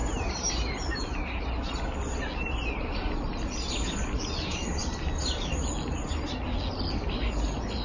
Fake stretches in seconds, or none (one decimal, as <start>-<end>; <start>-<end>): none